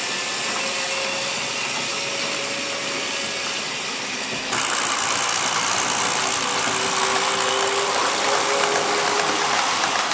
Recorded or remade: recorded